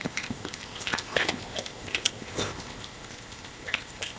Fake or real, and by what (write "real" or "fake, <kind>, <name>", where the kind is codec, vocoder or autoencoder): fake, codec, ZipCodec